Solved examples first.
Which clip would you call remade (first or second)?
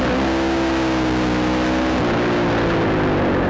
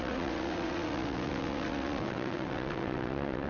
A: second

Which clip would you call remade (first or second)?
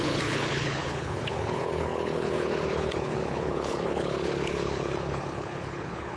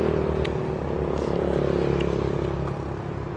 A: first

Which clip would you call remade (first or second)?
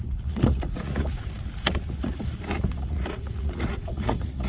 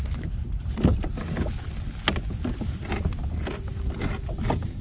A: first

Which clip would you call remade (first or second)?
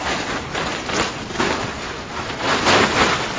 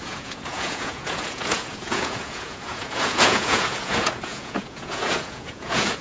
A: second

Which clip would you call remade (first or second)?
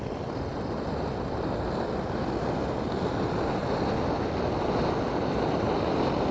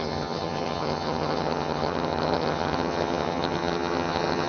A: second